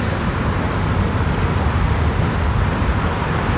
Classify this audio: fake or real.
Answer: real